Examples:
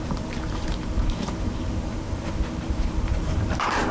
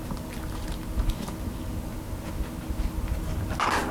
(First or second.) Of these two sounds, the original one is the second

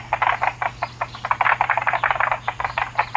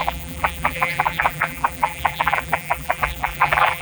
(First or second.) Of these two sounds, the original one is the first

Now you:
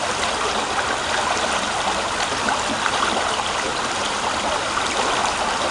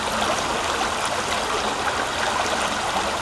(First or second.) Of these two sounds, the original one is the second